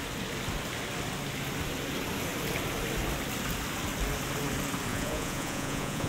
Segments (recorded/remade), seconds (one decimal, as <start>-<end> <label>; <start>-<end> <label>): 0.0-4.9 recorded; 4.9-6.1 remade